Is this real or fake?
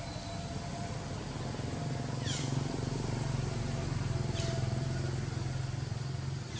real